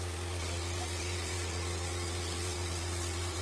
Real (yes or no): no